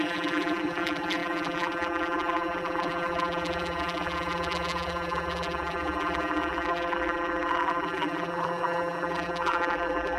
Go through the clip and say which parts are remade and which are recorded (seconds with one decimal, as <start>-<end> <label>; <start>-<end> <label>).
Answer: 0.0-10.2 remade